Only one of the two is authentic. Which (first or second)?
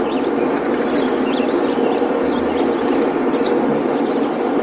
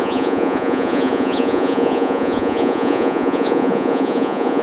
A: first